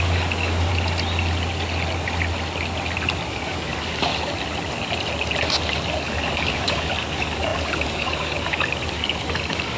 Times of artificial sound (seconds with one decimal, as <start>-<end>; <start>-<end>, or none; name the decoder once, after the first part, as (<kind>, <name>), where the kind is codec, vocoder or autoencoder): 0.0-0.7 (codec, DAC); 3.3-4.1; 6.0-9.8